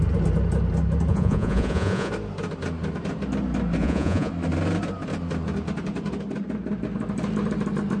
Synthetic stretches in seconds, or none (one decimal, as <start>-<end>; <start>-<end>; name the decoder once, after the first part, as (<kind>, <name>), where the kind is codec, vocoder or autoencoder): 1.1-2.1 (vocoder, Vocos); 3.8-4.3